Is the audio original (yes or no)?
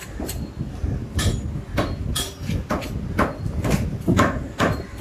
yes